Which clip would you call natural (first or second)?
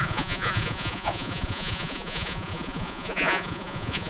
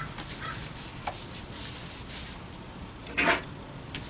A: second